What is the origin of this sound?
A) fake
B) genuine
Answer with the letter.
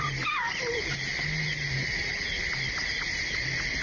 B